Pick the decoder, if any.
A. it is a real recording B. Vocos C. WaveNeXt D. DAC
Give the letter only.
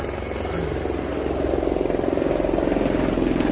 A